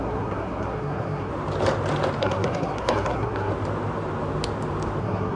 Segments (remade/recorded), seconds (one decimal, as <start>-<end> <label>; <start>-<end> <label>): 0.0-1.3 remade; 1.3-2.2 recorded; 2.2-3.5 remade; 3.5-5.0 recorded; 5.0-5.4 remade